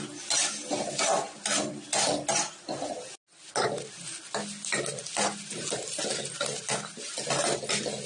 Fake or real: real